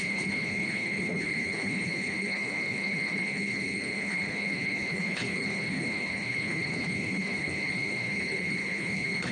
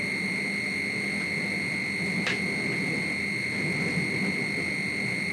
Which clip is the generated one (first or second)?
first